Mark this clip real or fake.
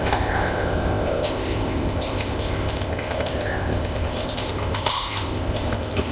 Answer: fake